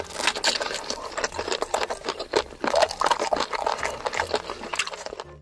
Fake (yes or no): no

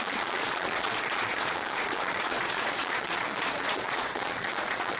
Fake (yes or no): yes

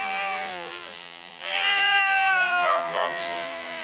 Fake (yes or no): yes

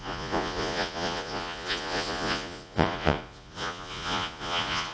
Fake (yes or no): yes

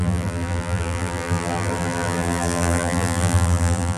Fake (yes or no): yes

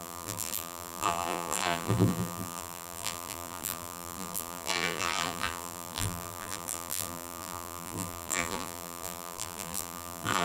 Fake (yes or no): yes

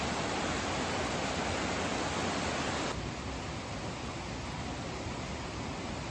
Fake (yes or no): no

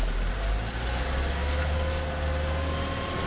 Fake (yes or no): no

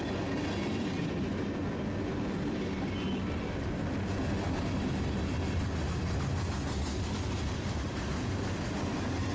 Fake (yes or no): no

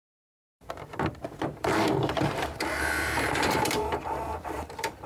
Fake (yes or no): yes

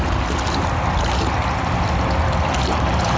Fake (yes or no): no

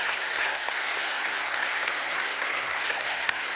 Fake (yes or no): yes